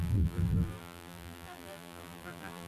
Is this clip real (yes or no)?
no